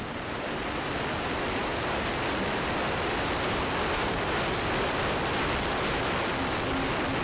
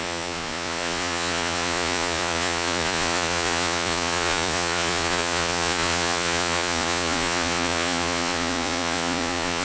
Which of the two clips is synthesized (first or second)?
second